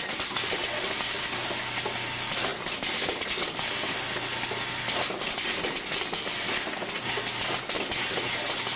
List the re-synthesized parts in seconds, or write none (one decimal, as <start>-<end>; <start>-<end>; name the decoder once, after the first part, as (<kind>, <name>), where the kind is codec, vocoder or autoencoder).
none